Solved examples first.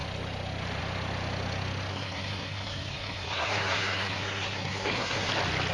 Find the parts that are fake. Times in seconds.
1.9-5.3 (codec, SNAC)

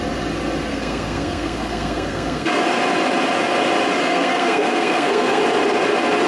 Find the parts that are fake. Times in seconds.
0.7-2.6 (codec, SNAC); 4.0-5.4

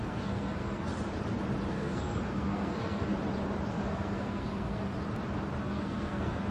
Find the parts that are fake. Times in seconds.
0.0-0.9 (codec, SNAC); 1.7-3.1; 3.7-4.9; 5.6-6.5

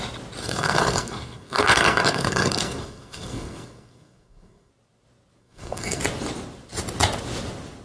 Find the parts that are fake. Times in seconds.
0.4-4.7 (codec, SNAC); 5.4-6.0

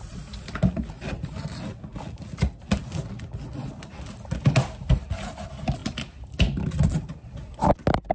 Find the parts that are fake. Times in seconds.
none